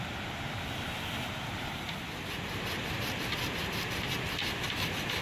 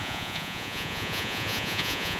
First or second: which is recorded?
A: first